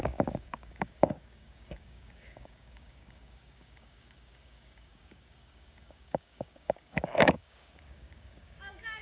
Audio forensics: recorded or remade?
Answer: remade